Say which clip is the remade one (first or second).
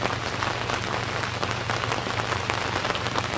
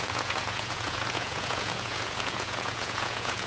second